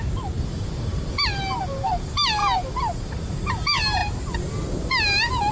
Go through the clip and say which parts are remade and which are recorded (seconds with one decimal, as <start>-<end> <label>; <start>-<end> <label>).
0.0-2.4 remade; 2.4-3.0 recorded; 3.0-4.0 remade; 4.0-4.9 recorded; 4.9-5.5 remade